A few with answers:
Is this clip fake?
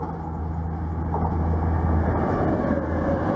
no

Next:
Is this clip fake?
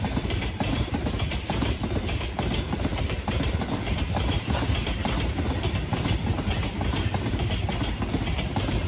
yes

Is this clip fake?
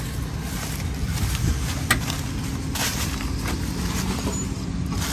no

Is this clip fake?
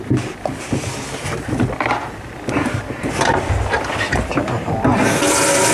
no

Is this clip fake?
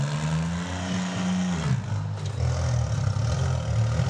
no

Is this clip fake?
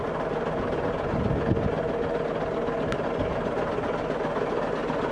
no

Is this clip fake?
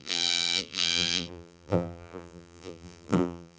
yes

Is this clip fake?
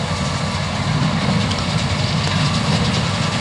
yes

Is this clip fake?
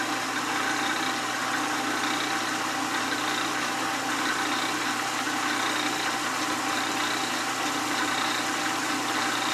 no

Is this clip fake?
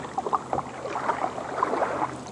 no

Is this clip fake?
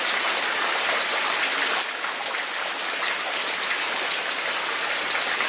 no